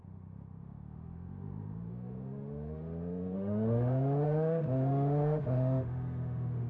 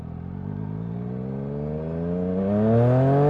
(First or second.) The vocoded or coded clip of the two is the first